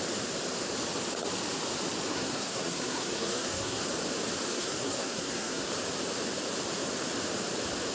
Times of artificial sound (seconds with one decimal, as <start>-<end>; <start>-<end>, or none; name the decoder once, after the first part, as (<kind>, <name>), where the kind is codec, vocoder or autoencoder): 2.1-3.8 (codec, SNAC); 4.5-5.7